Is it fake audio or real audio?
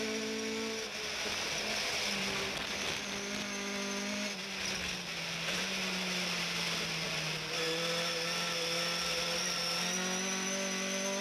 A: real